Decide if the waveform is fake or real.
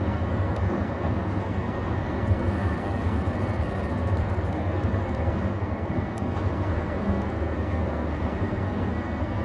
fake